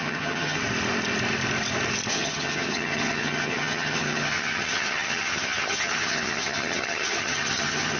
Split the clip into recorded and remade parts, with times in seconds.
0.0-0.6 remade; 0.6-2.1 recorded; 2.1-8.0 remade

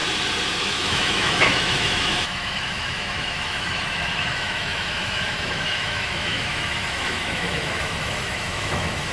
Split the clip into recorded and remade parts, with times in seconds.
0.0-0.6 recorded; 0.6-9.1 remade

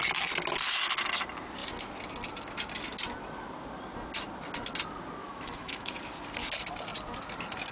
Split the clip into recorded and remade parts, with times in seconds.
0.0-5.2 recorded; 5.2-5.9 remade; 5.9-7.7 recorded

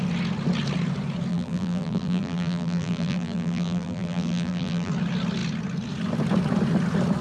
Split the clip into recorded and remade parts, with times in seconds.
0.0-1.3 recorded; 1.3-4.9 remade; 4.9-7.2 recorded

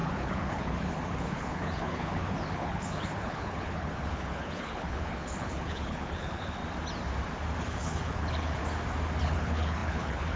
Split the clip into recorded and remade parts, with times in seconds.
0.0-6.6 remade; 6.6-7.6 recorded; 7.6-8.6 remade; 8.6-9.2 recorded; 9.2-10.4 remade

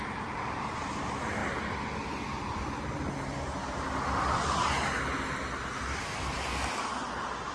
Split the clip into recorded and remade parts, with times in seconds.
0.0-1.4 remade; 1.4-5.9 recorded; 5.9-6.5 remade; 6.5-7.5 recorded

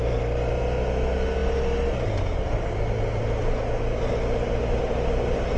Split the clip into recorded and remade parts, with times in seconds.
0.0-5.6 recorded